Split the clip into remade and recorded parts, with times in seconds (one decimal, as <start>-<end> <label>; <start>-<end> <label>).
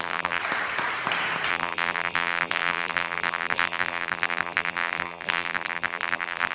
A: 0.0-0.4 remade; 0.4-1.5 recorded; 1.5-6.5 remade